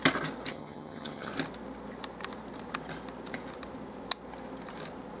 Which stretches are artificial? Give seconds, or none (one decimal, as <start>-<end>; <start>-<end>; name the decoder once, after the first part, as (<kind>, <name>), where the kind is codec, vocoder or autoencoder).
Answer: 0.5-1.3 (vocoder, HiFi-GAN)